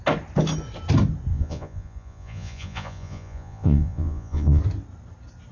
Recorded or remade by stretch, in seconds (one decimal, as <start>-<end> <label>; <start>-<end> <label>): 0.0-1.3 recorded; 1.3-4.6 remade; 4.6-5.5 recorded

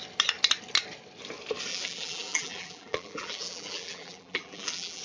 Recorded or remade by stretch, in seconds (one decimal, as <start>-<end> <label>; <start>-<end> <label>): 0.0-1.7 recorded; 1.7-5.0 remade

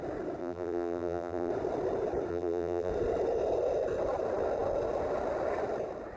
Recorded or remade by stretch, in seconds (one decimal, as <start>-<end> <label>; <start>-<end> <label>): 0.0-0.4 recorded; 0.4-1.5 remade; 1.5-2.3 recorded; 2.3-2.9 remade; 2.9-6.2 recorded

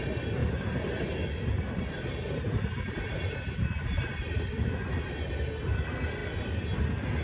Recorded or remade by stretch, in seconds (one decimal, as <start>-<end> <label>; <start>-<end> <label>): 0.0-0.4 recorded; 0.4-4.7 remade; 4.7-7.2 recorded

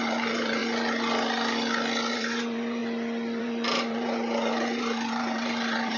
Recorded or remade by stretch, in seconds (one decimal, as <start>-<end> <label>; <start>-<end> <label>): 0.0-0.6 remade; 0.6-2.1 recorded; 2.1-2.8 remade; 2.8-3.4 recorded; 3.4-6.0 remade

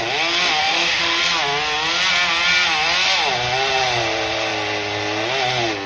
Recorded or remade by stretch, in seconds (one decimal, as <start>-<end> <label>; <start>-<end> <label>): 0.0-0.6 recorded; 0.6-1.2 remade; 1.2-5.9 recorded

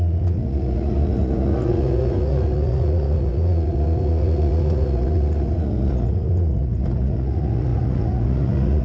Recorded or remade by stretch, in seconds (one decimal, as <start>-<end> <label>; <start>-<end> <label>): 0.0-8.8 remade